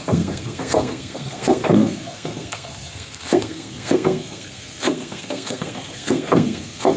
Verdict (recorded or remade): remade